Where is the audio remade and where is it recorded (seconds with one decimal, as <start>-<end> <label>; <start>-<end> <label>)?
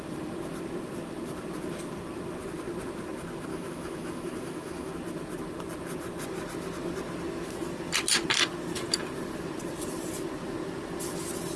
0.0-3.5 recorded; 3.5-4.9 remade; 4.9-11.6 recorded